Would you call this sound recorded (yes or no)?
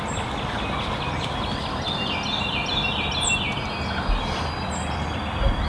yes